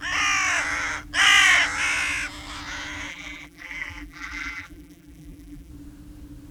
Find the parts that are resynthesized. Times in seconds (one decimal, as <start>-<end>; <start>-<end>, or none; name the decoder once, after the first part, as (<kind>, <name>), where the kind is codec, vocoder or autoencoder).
3.1-5.7 (vocoder, BigVGAN v2)

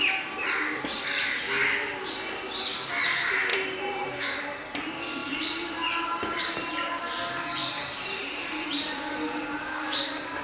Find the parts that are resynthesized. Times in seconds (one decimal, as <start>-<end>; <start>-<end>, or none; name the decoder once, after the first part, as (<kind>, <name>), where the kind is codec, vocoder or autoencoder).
3.5-4.4 (vocoder, BigVGAN v2); 5.2-6.9; 7.6-9.0

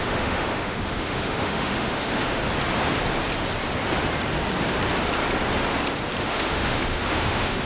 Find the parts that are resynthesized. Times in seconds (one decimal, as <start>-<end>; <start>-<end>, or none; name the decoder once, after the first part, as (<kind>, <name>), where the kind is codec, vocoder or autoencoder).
0.0-2.4 (autoencoder, DAC-VAE); 6.2-7.7